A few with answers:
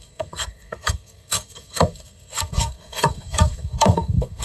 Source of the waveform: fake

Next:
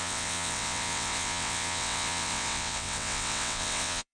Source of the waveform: fake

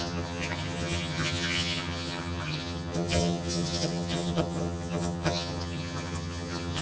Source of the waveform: fake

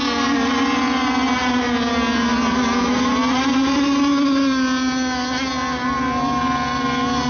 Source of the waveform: real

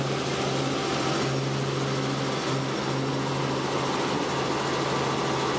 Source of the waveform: real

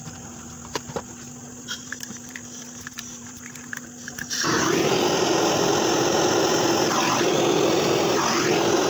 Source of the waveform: fake